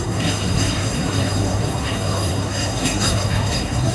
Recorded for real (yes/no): no